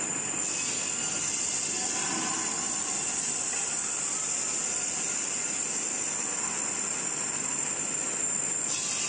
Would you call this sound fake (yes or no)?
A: no